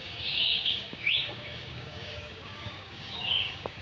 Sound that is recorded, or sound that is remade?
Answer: remade